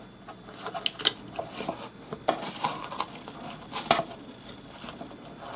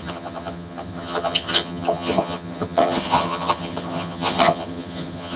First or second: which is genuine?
first